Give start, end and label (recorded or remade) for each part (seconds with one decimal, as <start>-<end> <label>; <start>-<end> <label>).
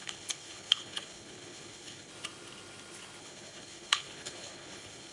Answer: 0.0-2.1 remade; 2.1-3.2 recorded; 3.2-5.1 remade